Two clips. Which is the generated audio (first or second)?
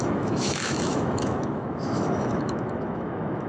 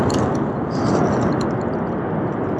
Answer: first